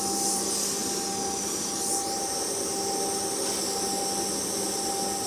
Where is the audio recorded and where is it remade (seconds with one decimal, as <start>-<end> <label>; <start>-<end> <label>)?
0.0-5.3 recorded